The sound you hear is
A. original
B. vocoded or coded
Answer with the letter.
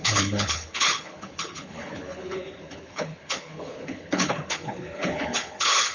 B